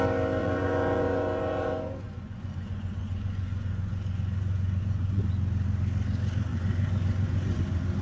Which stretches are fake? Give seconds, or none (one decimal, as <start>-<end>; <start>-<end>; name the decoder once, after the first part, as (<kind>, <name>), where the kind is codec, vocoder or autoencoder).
0.4-5.2 (vocoder, Vocos); 6.5-7.6